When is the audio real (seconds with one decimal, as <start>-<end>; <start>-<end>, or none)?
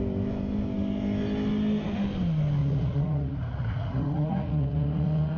0.0-2.6